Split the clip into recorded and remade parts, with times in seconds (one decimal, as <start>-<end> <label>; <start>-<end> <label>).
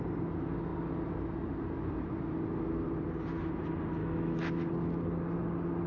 0.0-4.0 recorded; 4.0-4.7 remade; 4.7-5.9 recorded